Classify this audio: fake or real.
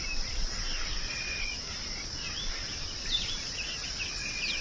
real